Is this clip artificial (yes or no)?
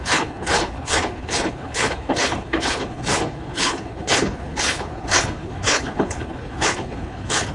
yes